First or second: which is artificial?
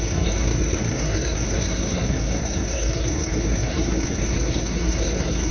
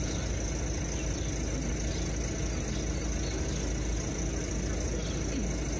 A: first